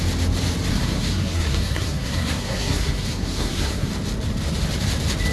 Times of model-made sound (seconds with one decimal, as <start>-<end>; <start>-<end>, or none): 0.7-3.9